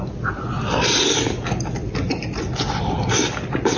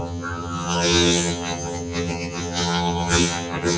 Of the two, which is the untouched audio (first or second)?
first